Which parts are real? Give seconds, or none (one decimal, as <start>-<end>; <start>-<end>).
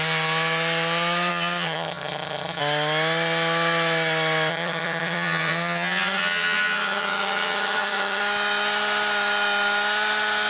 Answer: 0.0-1.3; 2.6-4.5; 8.2-10.5